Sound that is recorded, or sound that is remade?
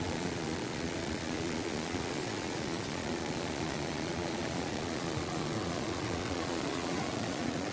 remade